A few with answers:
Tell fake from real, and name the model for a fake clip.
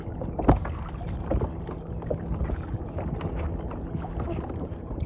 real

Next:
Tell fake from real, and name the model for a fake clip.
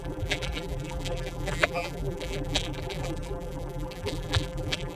fake, vocoder, BigVGAN v2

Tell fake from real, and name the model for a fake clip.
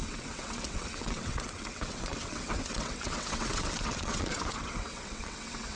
fake, vocoder, WaveNeXt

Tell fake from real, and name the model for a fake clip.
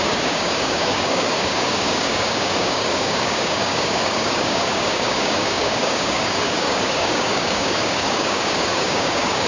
fake, codec, DAC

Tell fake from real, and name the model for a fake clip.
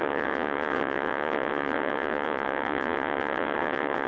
fake, vocoder, WaveNeXt